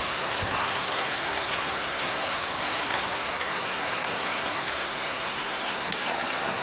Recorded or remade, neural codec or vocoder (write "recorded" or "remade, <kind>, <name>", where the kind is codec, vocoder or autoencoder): remade, codec, SNAC